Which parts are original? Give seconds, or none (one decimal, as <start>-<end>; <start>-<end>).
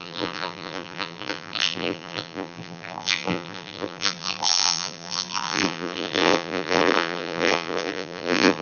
none